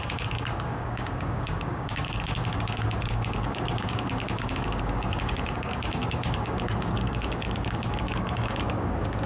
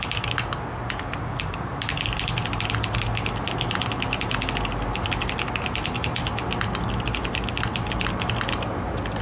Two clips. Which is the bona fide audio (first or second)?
second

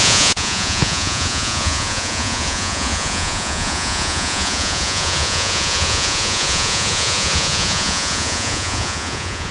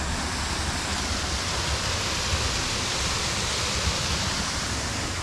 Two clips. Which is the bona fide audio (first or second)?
second